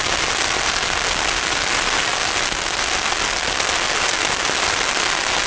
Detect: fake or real real